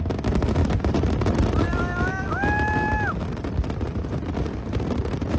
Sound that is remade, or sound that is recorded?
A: recorded